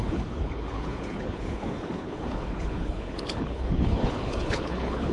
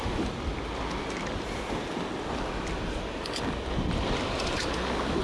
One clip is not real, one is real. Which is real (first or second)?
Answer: second